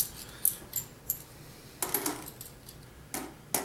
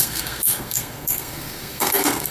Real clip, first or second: first